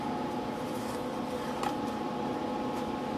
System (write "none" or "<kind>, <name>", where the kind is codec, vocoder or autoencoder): none